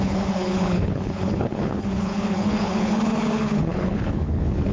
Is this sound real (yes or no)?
no